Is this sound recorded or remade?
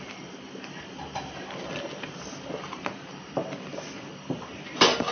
recorded